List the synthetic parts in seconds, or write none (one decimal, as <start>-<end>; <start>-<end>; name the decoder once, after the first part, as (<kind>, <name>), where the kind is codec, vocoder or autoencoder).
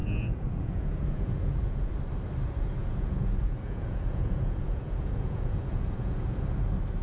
0.0-1.9 (vocoder, Vocos); 2.8-6.4